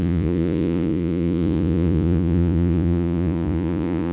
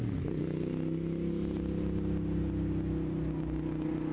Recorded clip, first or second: second